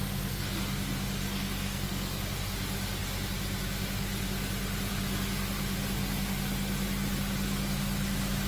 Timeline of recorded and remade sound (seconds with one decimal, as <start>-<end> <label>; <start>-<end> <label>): 0.0-0.6 remade; 0.6-1.2 recorded; 1.2-2.2 remade; 2.2-8.5 recorded